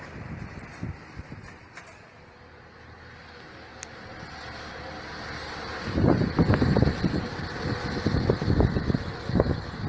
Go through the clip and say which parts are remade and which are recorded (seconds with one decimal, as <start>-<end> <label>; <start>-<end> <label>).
0.0-9.9 recorded

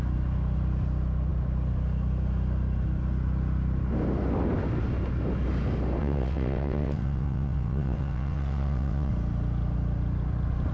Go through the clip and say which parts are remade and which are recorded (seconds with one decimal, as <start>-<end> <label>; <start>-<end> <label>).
0.0-6.0 recorded; 6.0-9.1 remade; 9.1-10.7 recorded